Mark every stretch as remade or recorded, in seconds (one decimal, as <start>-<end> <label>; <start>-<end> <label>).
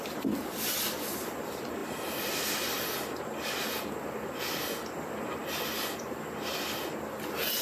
0.0-7.6 recorded